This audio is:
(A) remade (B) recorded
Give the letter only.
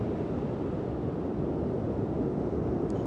B